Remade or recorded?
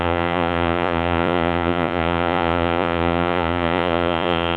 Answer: remade